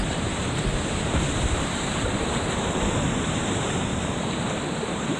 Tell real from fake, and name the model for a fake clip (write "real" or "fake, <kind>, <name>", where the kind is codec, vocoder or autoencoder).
fake, vocoder, BigVGAN v2